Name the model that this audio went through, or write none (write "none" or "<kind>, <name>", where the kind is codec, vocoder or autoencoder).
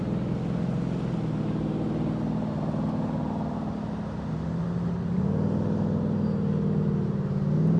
none